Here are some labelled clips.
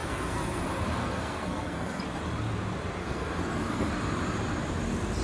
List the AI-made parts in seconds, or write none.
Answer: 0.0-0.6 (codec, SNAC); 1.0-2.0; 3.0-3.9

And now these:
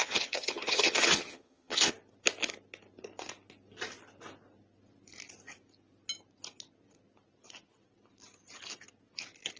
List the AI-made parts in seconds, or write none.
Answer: 0.0-1.9 (vocoder, HiFi-GAN)